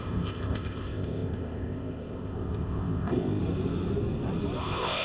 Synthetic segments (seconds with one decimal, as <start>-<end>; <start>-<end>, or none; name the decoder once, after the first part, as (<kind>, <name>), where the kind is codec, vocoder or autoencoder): 0.0-3.4 (codec, ZipCodec); 4.6-5.0

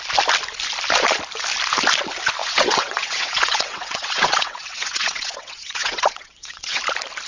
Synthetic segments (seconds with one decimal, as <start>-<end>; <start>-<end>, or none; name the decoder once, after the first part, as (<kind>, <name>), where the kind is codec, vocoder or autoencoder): 2.4-6.8 (vocoder, WaveNeXt)

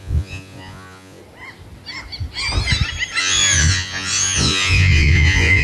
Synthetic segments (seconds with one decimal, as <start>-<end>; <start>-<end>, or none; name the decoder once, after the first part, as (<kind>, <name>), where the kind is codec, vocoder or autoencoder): 0.0-1.2 (vocoder, Vocos); 3.2-5.6

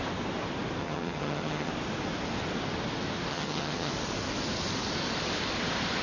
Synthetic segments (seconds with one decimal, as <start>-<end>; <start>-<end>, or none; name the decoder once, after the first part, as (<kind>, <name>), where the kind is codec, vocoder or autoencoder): 0.8-1.7 (vocoder, HiFi-GAN); 3.3-3.9

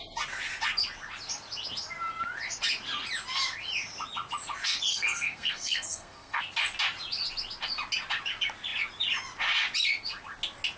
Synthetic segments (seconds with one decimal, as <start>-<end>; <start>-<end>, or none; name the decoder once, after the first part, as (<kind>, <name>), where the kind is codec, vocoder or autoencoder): 4.9-6.4 (codec, SNAC)

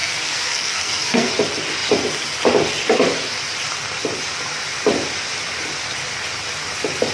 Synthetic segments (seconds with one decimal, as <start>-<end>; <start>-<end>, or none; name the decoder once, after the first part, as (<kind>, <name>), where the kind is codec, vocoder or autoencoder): 0.0-1.3 (codec, SNAC)